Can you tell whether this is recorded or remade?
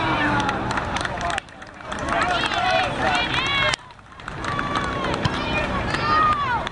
remade